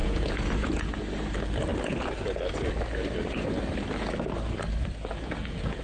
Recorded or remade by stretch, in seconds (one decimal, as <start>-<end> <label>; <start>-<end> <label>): 0.0-0.7 remade; 0.7-4.8 recorded; 4.8-5.8 remade